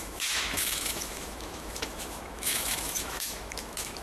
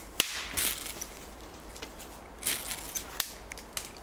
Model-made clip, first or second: first